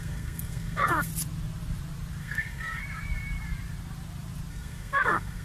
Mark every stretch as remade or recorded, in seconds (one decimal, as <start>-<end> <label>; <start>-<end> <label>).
0.0-1.1 remade; 1.1-2.2 recorded; 2.2-2.8 remade; 2.8-4.5 recorded; 4.5-5.4 remade